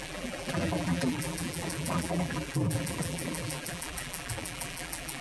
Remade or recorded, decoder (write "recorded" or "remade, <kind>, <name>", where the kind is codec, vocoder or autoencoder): remade, vocoder, BigVGAN v2